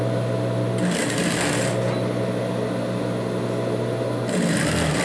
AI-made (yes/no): no